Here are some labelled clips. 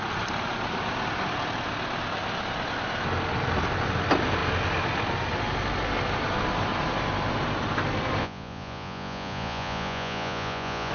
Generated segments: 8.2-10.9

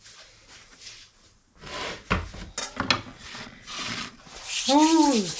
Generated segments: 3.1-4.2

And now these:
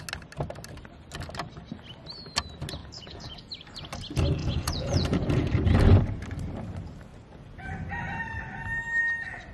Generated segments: 2.8-3.5; 4.4-5.5